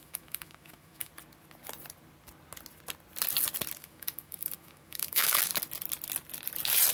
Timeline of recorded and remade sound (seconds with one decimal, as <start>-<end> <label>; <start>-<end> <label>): 0.0-1.1 remade; 1.1-3.8 recorded; 3.8-5.5 remade; 5.5-6.9 recorded